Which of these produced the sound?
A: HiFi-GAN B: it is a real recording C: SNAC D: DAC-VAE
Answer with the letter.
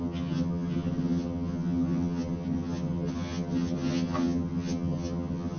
A